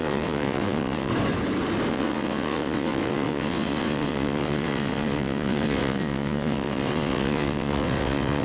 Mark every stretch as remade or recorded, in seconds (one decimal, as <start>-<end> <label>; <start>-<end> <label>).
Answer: 0.0-1.1 remade; 1.1-1.9 recorded; 1.9-8.4 remade